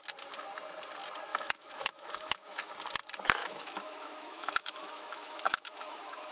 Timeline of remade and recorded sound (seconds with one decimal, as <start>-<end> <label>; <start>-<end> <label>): 0.0-1.3 recorded; 1.3-2.7 remade; 2.7-3.4 recorded; 3.4-6.3 remade